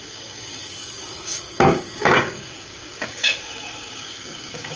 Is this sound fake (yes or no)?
yes